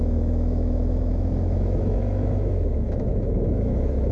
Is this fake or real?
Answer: fake